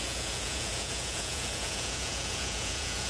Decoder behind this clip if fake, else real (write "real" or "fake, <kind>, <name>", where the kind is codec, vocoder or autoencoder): fake, vocoder, Vocos